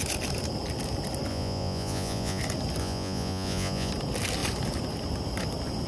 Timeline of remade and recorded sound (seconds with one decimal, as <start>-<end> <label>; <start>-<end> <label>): 0.0-1.3 recorded; 1.3-2.4 remade; 2.4-2.8 recorded; 2.8-3.9 remade; 3.9-5.9 recorded